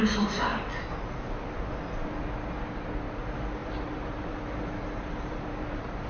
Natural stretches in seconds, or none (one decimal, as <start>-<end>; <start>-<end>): 0.0-3.6